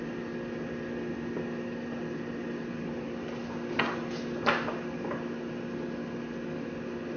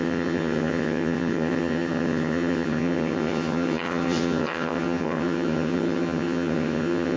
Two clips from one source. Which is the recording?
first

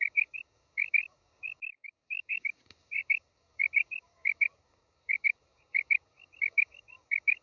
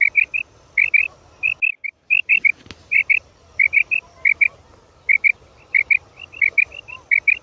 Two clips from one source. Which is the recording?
second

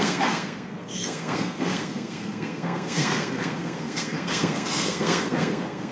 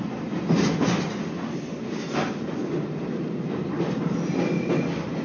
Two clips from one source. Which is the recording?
second